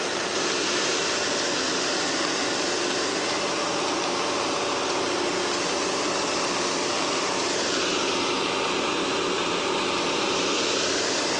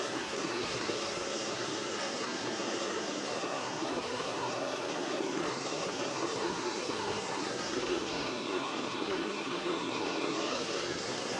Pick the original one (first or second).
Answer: first